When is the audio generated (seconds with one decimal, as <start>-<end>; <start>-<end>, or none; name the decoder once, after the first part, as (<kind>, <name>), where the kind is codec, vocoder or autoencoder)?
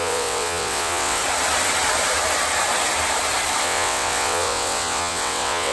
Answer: 0.0-1.2 (vocoder, WaveNeXt); 3.6-5.7